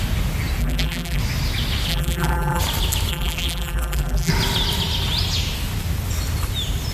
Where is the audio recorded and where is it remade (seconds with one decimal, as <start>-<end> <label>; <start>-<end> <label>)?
0.0-0.6 recorded; 0.6-1.2 remade; 1.2-1.9 recorded; 1.9-2.6 remade; 2.6-3.1 recorded; 3.1-4.3 remade; 4.3-6.9 recorded